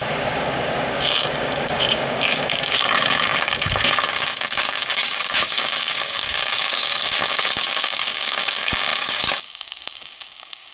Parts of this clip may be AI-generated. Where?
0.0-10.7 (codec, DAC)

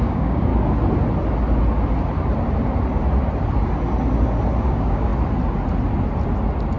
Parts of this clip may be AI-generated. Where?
0.0-0.5 (codec, DAC); 4.6-5.1

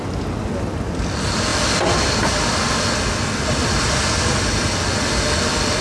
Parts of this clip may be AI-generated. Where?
none